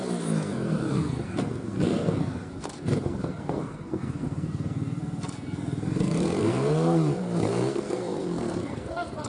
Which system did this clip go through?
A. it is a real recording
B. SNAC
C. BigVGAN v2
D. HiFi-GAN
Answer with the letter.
B